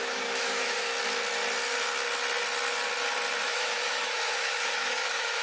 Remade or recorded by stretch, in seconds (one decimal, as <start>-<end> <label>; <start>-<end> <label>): 0.0-0.9 remade; 0.9-3.4 recorded; 3.4-5.4 remade